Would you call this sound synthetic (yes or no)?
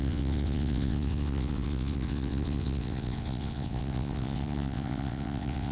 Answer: yes